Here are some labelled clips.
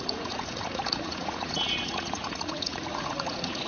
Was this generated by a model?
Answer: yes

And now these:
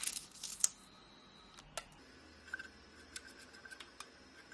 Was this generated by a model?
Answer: no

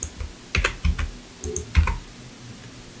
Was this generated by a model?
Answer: no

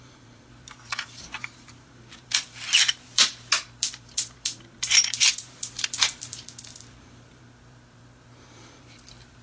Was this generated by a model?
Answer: yes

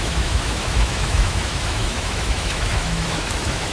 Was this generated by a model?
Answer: yes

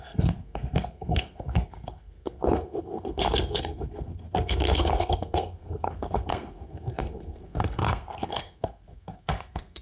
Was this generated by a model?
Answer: yes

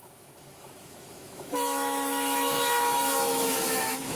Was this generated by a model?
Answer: yes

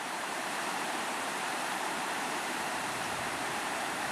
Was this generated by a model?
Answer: yes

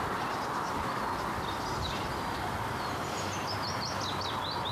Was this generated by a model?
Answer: no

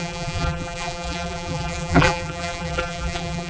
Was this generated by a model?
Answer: yes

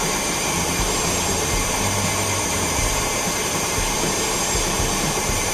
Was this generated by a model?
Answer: yes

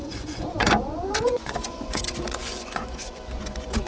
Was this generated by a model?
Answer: yes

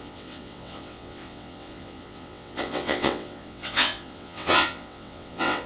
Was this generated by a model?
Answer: yes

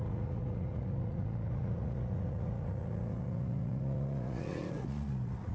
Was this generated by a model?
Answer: yes